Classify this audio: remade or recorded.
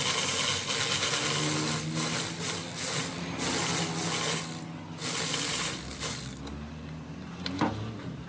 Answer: recorded